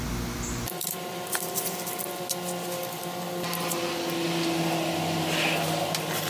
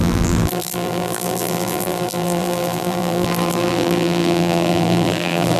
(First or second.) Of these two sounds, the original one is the first